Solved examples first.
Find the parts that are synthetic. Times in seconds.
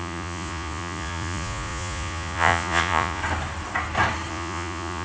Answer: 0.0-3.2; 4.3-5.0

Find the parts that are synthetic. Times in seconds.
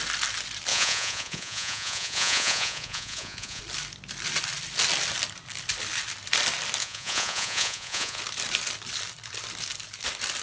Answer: 0.7-3.6; 6.8-8.2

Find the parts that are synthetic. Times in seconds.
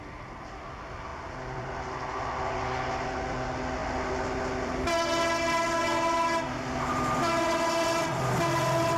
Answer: none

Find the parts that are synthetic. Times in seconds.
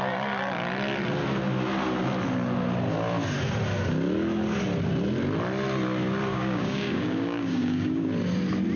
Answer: 6.3-8.1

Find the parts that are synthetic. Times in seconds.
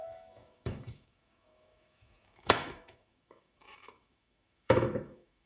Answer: 0.0-5.5